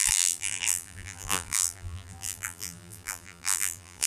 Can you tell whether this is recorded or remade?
remade